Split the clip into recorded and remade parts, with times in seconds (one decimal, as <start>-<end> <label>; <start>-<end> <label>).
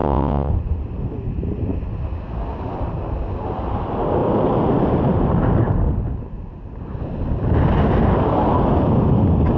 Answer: 0.0-0.5 remade; 0.5-9.6 recorded